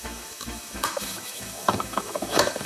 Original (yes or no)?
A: no